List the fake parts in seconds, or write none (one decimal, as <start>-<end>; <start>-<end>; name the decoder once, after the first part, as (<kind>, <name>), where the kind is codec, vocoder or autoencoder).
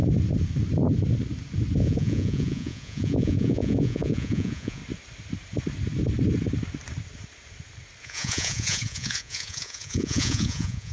1.8-4.8 (vocoder, Vocos); 8.0-10.9